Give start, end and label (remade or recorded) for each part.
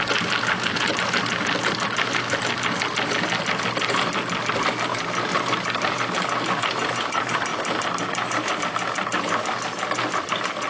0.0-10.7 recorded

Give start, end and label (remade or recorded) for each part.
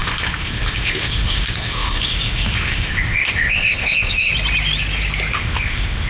0.0-4.3 remade; 4.3-5.3 recorded; 5.3-6.1 remade